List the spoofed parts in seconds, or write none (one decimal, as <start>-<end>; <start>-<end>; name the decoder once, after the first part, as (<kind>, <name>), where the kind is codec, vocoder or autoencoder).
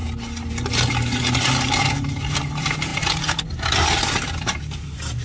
0.5-5.2 (vocoder, BigVGAN v2)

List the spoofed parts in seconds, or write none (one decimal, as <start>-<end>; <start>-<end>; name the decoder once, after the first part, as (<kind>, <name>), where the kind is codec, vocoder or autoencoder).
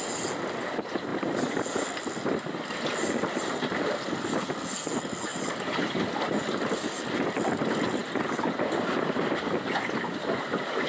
5.3-6.0 (vocoder, BigVGAN v2)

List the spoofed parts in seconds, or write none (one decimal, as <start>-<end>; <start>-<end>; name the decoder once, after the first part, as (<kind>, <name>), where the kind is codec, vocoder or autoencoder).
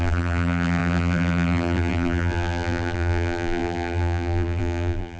0.0-5.2 (vocoder, BigVGAN v2)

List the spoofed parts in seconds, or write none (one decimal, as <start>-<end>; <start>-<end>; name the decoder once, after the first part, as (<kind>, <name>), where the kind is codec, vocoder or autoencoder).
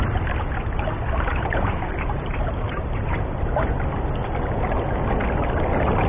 1.3-3.9 (vocoder, BigVGAN v2)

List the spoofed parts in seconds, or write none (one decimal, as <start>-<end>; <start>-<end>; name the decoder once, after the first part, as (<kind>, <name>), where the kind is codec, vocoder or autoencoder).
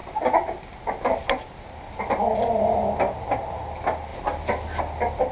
none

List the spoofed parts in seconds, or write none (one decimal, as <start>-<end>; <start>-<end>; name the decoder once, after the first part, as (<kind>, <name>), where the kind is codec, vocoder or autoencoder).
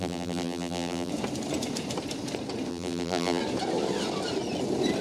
0.0-1.1 (vocoder, BigVGAN v2); 2.7-3.4